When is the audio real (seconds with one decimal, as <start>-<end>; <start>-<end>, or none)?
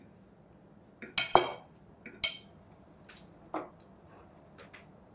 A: 0.0-5.1